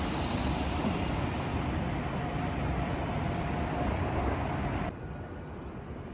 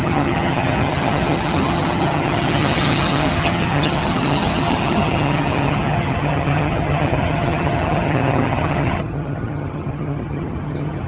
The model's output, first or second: second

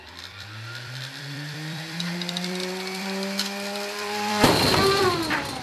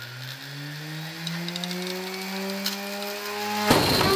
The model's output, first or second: first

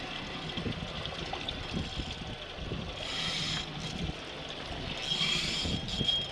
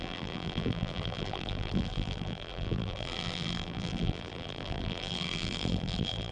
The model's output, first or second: second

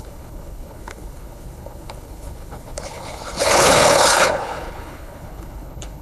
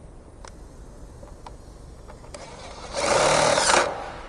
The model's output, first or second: first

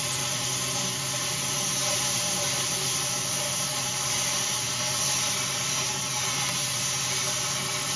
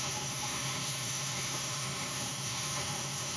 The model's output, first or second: second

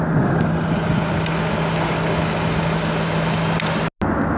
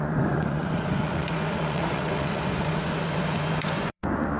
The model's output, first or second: second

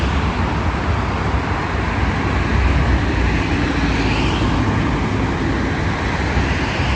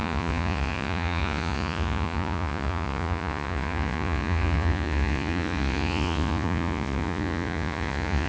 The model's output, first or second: second